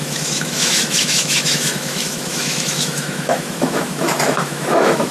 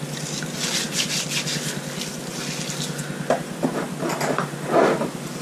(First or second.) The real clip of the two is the second